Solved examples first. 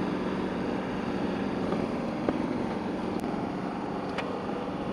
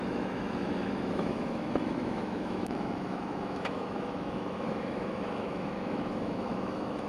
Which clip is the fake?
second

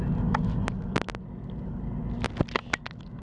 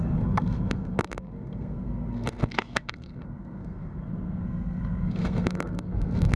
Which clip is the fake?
second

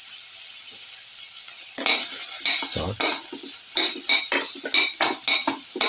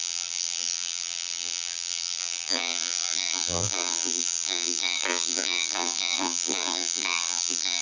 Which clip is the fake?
second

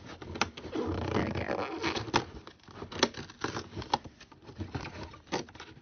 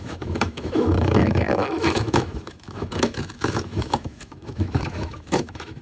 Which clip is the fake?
second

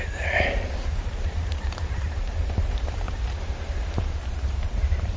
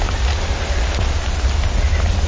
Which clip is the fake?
first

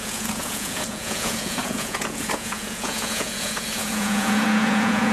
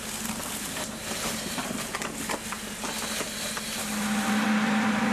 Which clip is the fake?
first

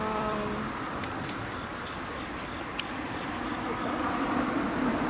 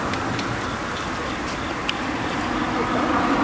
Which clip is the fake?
first